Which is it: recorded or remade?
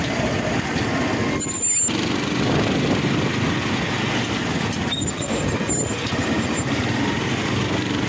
recorded